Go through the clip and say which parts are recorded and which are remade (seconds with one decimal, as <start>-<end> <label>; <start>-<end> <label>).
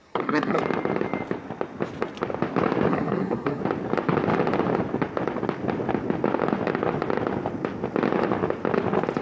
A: 0.0-0.6 remade; 0.6-2.9 recorded; 2.9-3.6 remade; 3.6-9.2 recorded